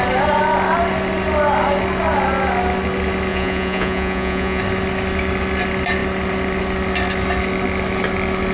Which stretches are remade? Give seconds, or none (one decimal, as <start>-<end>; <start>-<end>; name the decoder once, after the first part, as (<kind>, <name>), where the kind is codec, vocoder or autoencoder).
3.3-4.6 (vocoder, Vocos)